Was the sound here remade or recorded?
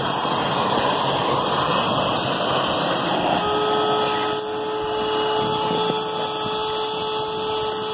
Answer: recorded